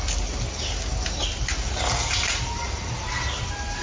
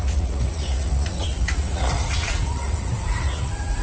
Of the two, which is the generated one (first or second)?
second